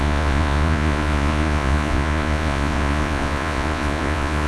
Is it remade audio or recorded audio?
remade